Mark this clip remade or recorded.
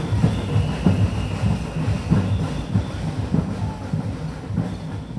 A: recorded